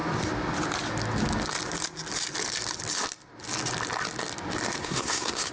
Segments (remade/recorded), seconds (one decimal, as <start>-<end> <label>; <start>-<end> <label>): 0.0-4.8 recorded; 4.8-5.5 remade